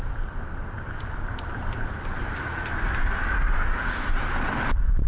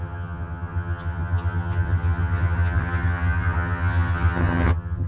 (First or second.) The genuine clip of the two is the first